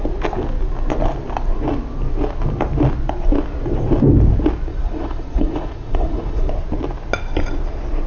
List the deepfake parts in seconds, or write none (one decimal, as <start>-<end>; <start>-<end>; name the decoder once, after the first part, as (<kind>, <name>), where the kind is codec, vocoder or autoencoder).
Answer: 4.7-6.5 (vocoder, Vocos)